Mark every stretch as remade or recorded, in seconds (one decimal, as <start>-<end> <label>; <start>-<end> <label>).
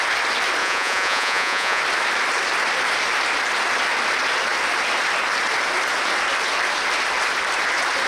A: 0.0-0.6 recorded; 0.6-1.8 remade; 1.8-8.1 recorded